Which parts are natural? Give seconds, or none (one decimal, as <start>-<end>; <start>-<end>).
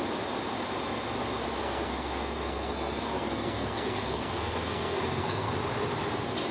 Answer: 0.0-1.6; 5.5-6.5